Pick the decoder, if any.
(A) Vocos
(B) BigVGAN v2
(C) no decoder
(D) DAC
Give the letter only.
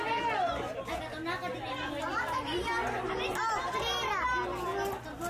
C